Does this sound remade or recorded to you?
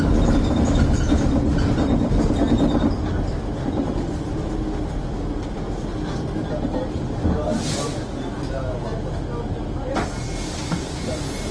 recorded